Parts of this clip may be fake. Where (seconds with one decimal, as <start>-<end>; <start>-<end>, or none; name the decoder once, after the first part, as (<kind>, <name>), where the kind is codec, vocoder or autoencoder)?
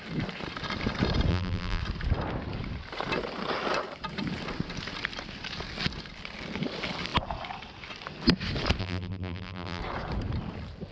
1.3-1.8 (vocoder, BigVGAN v2); 8.8-9.8